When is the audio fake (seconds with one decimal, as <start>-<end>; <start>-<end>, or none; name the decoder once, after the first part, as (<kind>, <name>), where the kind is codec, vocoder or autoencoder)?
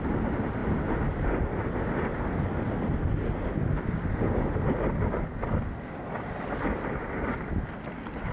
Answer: none